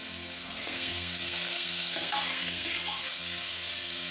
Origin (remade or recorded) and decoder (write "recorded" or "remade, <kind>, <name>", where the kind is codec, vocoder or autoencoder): remade, codec, SNAC